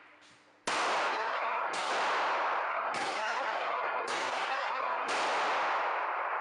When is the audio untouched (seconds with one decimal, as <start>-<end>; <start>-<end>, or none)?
0.0-1.1; 1.9-2.7; 5.1-6.4